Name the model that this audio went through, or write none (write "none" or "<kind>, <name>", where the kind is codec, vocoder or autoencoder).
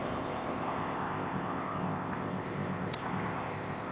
codec, ZipCodec